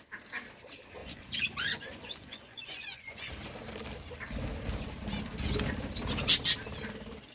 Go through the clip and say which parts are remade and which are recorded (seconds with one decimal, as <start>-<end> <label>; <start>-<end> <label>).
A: 0.0-1.0 recorded; 1.0-3.3 remade; 3.3-7.3 recorded